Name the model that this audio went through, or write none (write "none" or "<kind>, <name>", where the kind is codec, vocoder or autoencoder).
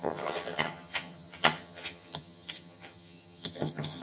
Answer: vocoder, HiFi-GAN